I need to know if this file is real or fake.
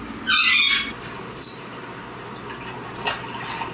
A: real